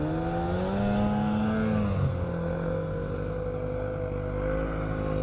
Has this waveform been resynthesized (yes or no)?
no